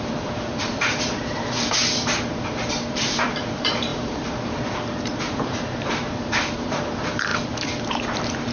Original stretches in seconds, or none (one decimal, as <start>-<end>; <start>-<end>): 7.3-8.1